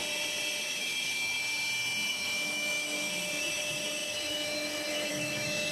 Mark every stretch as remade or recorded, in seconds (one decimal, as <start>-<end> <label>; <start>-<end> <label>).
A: 0.0-0.6 recorded; 0.6-1.4 remade; 1.4-2.1 recorded; 2.1-5.7 remade